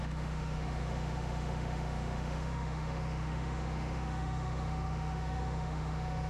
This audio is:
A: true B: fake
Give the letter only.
B